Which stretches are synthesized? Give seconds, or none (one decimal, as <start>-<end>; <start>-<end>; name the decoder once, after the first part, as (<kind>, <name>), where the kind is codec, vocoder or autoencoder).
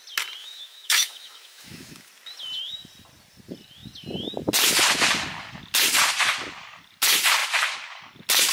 0.4-2.1 (autoencoder, DAC-VAE)